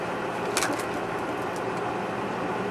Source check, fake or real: real